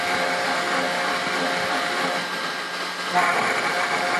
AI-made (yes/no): no